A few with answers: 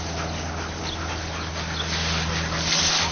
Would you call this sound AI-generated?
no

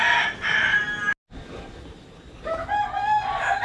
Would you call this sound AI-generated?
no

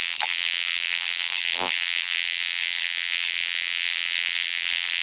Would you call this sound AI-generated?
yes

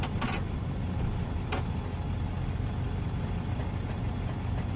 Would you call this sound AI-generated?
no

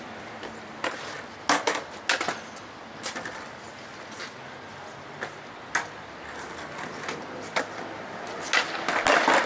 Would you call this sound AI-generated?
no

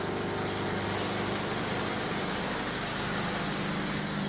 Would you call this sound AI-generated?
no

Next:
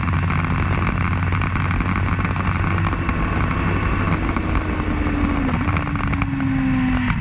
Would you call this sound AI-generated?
no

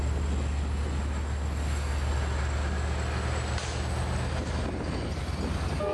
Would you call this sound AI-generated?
no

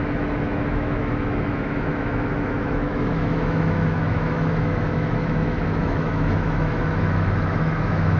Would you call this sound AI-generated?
yes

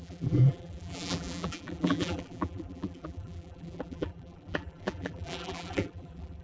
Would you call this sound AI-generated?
yes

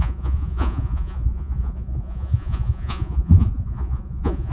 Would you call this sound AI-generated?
yes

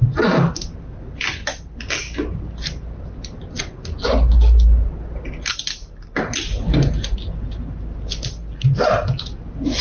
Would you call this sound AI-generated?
no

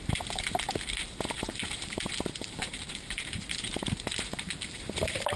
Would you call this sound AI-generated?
yes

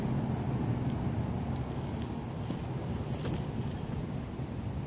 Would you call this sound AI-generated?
no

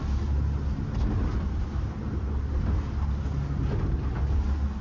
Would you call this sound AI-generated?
no